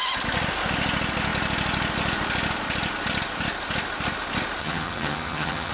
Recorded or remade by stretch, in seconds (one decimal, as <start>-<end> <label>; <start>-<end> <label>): 0.0-4.6 recorded; 4.6-5.7 remade